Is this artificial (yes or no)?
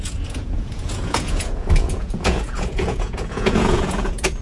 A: yes